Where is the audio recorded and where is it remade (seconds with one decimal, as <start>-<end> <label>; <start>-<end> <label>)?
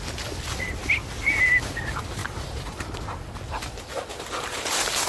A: 0.0-5.1 recorded